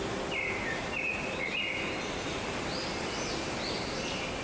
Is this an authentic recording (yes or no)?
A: yes